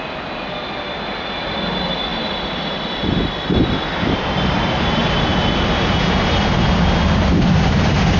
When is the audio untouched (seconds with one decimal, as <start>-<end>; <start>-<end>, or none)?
0.0-2.1; 2.8-8.2